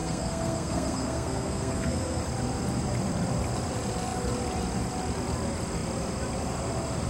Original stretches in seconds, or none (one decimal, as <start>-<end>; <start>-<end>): 2.2-7.1